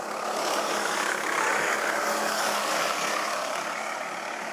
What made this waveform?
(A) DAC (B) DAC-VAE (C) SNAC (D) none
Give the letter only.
A